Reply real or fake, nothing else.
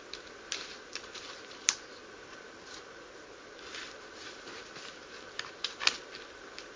real